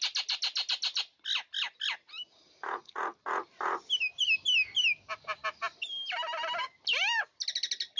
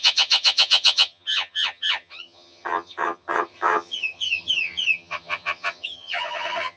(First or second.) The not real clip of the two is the second